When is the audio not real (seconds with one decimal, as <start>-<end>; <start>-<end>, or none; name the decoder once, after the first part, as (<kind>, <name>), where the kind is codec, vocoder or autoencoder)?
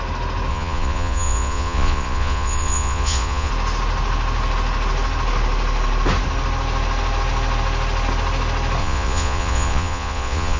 0.5-3.5 (vocoder, Vocos); 8.8-10.6